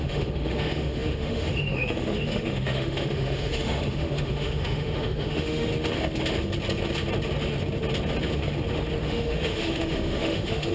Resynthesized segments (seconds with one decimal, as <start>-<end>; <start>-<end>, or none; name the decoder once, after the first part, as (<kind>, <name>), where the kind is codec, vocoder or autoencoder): 0.0-5.7 (autoencoder, DAC-VAE); 9.0-10.7